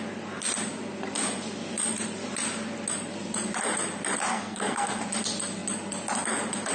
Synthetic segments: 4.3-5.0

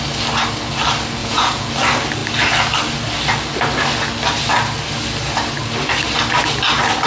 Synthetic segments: 1.2-1.7

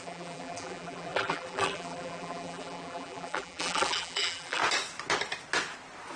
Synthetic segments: 0.0-4.6

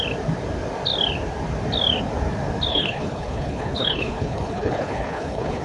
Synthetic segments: 2.7-5.6

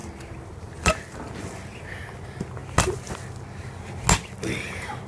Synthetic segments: 0.0-0.9